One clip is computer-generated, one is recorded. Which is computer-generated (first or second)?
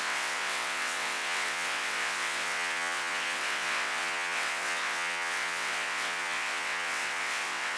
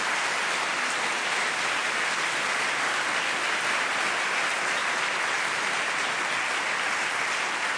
first